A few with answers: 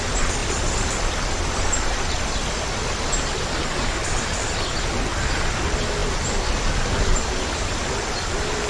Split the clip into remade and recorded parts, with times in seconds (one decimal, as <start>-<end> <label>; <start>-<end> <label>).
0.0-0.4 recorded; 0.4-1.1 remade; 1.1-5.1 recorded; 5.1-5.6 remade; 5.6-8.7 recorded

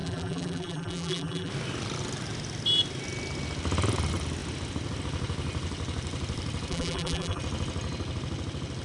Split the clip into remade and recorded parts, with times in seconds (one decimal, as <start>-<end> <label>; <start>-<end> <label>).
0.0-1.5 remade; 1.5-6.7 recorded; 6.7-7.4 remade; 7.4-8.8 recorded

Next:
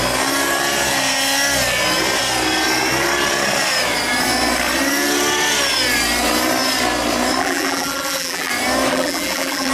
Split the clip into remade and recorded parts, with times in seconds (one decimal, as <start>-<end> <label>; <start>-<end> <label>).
0.0-7.4 recorded; 7.4-8.5 remade; 8.5-8.9 recorded; 8.9-9.7 remade